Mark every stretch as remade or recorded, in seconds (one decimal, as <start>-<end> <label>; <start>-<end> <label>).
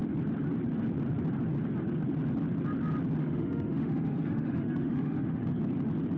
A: 0.0-3.2 recorded; 3.2-5.4 remade; 5.4-6.2 recorded